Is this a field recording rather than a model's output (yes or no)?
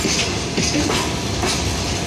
yes